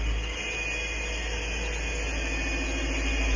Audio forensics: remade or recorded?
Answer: recorded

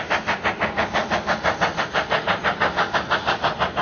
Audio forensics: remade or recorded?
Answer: recorded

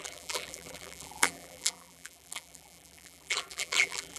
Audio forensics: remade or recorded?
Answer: remade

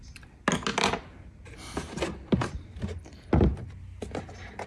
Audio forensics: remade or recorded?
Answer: recorded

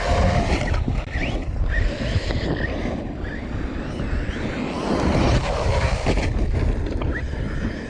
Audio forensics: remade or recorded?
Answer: recorded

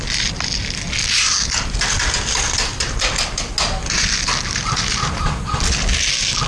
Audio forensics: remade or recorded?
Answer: recorded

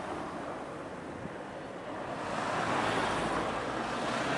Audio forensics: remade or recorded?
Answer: recorded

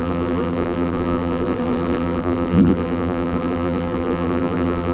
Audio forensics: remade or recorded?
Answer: remade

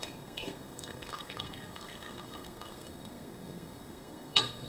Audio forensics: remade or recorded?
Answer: remade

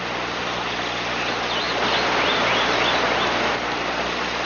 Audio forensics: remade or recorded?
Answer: recorded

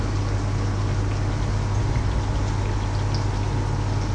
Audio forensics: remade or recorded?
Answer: recorded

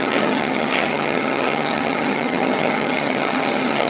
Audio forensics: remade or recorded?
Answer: remade